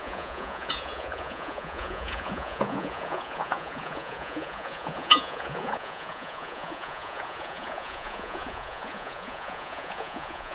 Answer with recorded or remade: remade